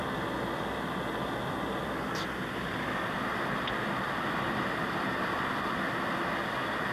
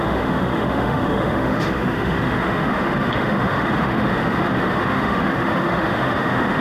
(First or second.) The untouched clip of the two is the first